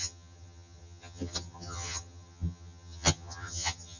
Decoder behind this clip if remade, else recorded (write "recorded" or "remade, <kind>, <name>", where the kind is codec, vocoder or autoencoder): remade, vocoder, HiFi-GAN